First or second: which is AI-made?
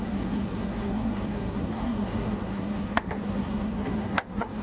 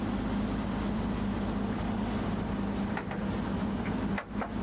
first